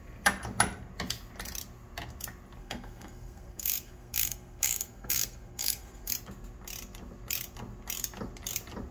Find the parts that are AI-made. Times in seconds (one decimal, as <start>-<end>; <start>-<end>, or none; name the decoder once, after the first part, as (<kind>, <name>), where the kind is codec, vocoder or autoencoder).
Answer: 2.6-6.1 (codec, SNAC)